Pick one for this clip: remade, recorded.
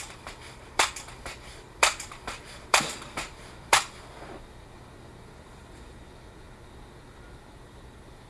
remade